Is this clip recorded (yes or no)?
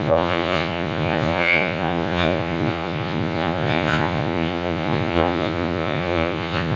no